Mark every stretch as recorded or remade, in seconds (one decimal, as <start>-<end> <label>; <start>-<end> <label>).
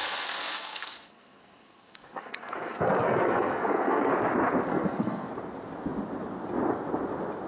0.0-4.1 remade; 4.1-4.7 recorded; 4.7-5.3 remade; 5.3-7.5 recorded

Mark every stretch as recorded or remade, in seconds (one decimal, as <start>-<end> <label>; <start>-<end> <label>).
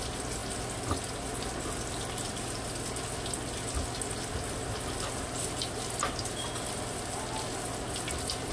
0.0-8.5 recorded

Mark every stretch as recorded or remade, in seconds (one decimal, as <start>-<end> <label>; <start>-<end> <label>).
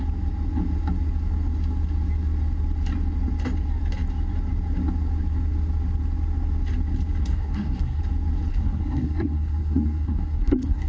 0.0-7.2 recorded; 7.2-8.0 remade; 8.0-8.5 recorded; 8.5-10.9 remade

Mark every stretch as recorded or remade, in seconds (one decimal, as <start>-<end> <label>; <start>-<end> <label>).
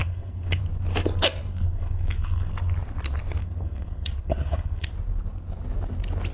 0.0-0.6 remade; 0.6-1.5 recorded; 1.5-2.5 remade; 2.5-3.4 recorded; 3.4-4.9 remade; 4.9-6.3 recorded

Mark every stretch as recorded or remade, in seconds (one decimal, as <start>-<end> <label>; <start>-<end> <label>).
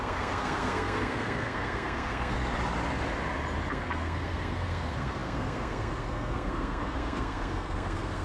0.0-2.4 remade; 2.4-3.7 recorded; 3.7-8.2 remade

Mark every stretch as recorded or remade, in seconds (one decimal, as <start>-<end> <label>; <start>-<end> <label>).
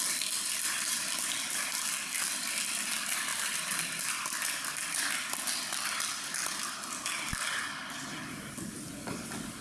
0.0-9.6 recorded